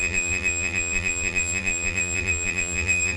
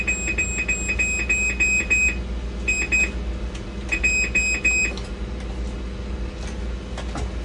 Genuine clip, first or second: second